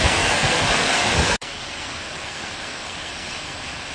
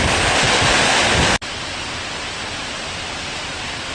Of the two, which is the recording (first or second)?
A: second